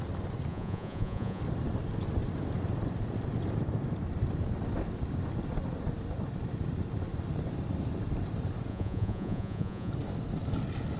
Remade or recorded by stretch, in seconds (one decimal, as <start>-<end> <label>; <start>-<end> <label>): 0.0-0.5 recorded; 0.5-1.4 remade; 1.4-8.7 recorded; 8.7-9.9 remade; 9.9-11.0 recorded